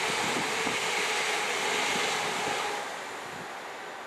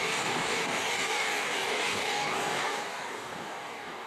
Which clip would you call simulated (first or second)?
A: second